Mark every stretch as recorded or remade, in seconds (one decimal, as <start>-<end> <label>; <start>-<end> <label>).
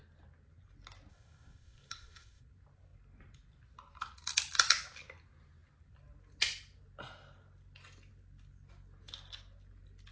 0.0-1.1 recorded; 1.1-2.4 remade; 2.4-10.1 recorded